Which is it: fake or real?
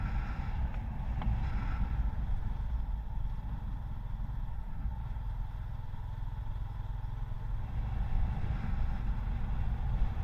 real